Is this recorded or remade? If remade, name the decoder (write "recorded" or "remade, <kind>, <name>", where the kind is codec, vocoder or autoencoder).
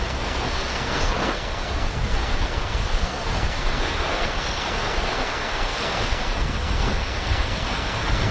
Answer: remade, codec, SNAC